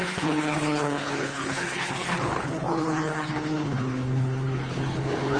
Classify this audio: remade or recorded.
remade